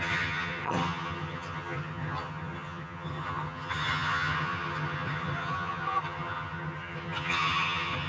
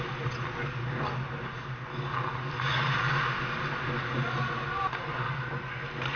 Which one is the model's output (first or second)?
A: first